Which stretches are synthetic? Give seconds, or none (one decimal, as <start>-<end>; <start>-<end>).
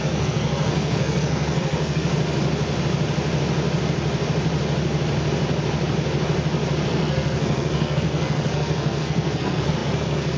0.0-2.1; 6.9-10.4